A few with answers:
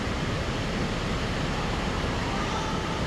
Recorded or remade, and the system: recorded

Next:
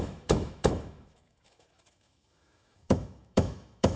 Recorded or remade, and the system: remade, autoencoder, DAC-VAE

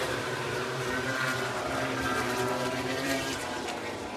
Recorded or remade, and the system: remade, vocoder, BigVGAN v2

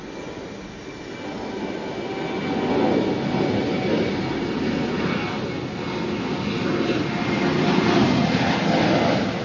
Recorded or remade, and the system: recorded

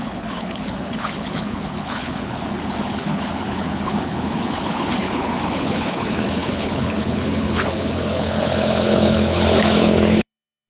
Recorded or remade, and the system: remade, codec, HILCodec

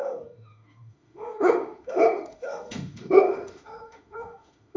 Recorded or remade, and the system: remade, autoencoder, DAC-VAE